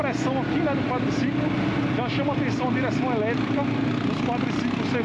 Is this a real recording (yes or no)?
yes